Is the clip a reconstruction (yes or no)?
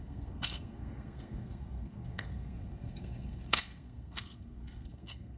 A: yes